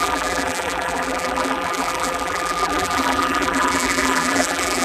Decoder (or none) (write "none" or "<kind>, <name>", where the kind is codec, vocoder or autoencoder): vocoder, BigVGAN v2